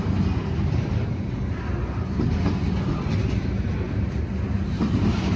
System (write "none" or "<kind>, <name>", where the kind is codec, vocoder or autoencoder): none